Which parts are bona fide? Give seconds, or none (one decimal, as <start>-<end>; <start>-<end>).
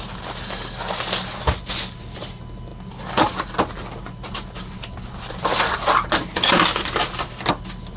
0.0-8.0